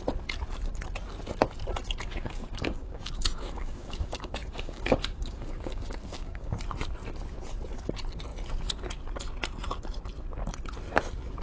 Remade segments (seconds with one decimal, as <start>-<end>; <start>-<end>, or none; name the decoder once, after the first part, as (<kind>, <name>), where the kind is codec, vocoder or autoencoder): 2.2-6.6 (codec, DAC)